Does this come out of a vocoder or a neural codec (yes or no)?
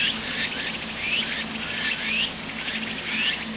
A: no